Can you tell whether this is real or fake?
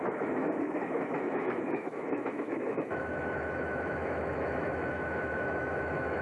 fake